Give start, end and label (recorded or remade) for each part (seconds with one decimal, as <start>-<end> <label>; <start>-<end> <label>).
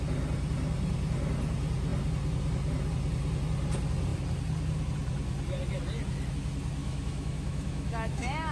0.0-6.8 recorded; 6.8-8.5 remade